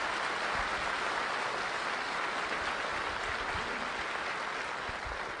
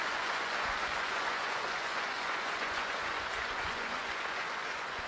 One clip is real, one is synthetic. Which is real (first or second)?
first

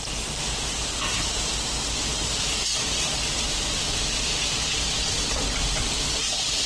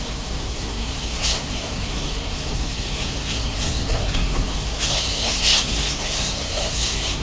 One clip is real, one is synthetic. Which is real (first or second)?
first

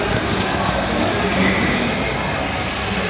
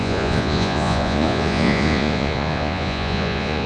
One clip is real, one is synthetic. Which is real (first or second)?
first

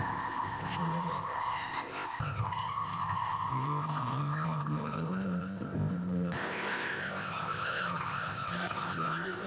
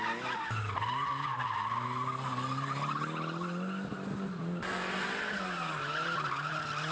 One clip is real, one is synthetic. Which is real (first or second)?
second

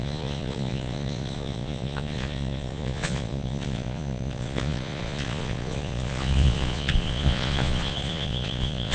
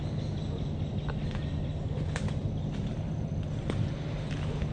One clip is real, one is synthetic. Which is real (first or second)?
second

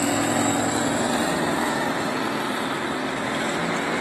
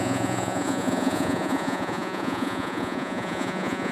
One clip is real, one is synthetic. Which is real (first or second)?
first